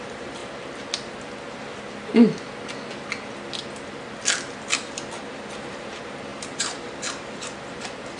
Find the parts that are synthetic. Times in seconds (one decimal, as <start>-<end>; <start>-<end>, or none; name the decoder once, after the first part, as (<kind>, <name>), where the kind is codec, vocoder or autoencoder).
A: 0.0-0.4 (vocoder, BigVGAN v2); 4.6-8.2